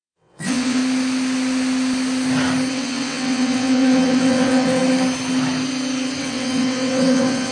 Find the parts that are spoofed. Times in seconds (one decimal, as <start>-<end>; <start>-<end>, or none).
0.0-0.8; 2.7-4.8; 6.2-7.5